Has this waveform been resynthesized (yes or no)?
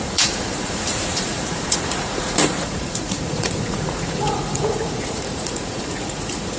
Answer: yes